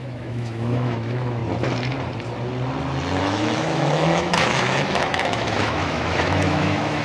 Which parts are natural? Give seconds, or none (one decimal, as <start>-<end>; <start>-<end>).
1.4-3.2